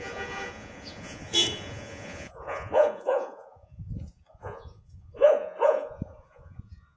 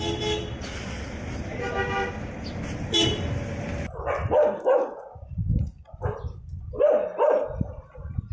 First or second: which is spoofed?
first